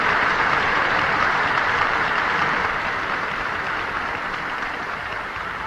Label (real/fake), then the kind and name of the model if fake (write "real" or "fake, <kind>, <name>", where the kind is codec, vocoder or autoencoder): fake, vocoder, BigVGAN v2